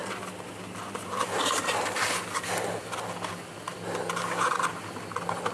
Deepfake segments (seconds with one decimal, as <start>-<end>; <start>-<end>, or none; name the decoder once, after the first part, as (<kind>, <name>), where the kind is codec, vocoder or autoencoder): none